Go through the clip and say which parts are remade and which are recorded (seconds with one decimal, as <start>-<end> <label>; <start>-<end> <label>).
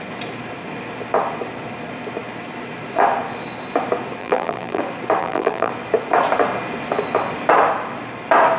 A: 0.0-4.2 recorded; 4.2-4.8 remade; 4.8-5.2 recorded; 5.2-5.7 remade; 5.7-8.6 recorded